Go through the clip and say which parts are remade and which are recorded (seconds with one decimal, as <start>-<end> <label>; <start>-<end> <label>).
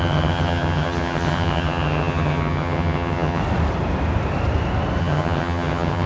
0.0-3.4 remade; 3.4-5.0 recorded; 5.0-6.1 remade